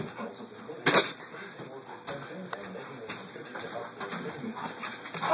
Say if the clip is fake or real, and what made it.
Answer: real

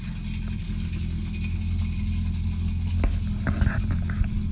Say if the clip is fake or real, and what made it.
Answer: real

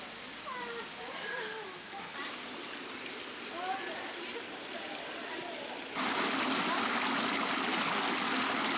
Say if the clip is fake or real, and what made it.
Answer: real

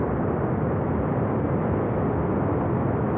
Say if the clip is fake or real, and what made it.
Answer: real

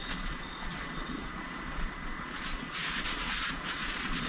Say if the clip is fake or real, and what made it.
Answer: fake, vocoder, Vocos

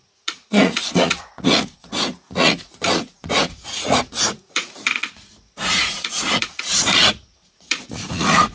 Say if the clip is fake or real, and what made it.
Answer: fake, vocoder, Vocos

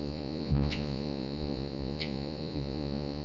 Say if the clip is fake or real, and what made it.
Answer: fake, vocoder, Vocos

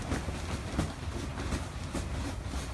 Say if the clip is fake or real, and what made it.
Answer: real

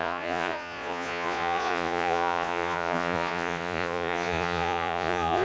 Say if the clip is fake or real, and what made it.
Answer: fake, vocoder, Vocos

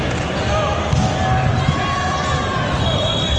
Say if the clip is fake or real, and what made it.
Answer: real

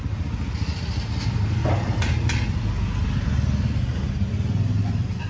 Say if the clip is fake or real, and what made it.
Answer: real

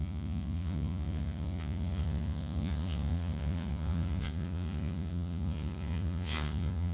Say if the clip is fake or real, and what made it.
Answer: fake, vocoder, Vocos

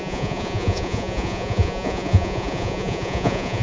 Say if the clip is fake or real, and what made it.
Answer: fake, vocoder, Vocos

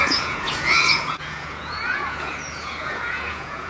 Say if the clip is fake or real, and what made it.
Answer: fake, vocoder, Vocos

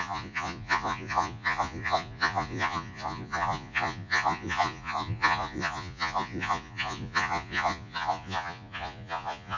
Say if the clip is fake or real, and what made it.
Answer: fake, vocoder, Vocos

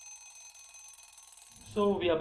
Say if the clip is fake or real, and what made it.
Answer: real